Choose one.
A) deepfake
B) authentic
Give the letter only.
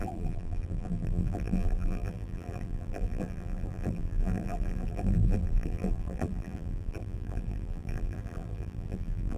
A